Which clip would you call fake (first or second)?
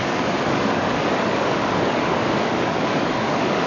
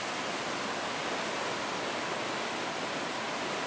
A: first